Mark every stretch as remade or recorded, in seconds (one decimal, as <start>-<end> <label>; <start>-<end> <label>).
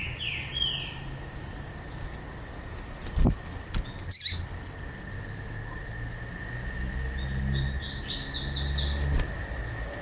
0.0-10.0 recorded